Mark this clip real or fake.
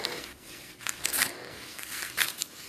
fake